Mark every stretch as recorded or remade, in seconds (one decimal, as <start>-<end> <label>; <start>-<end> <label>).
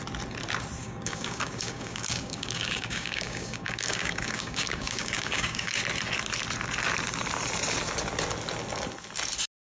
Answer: 0.0-0.8 recorded; 0.8-5.8 remade; 5.8-9.8 recorded